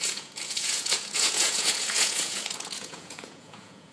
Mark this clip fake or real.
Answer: fake